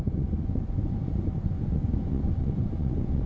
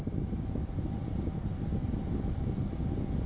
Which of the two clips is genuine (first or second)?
second